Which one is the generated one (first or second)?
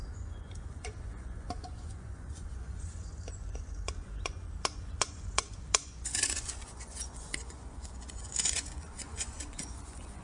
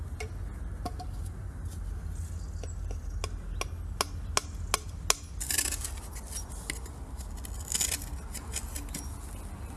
first